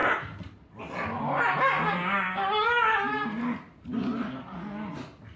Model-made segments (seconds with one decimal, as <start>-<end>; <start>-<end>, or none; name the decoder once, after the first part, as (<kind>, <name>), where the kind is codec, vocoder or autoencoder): none